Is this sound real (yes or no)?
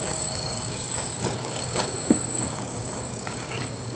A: no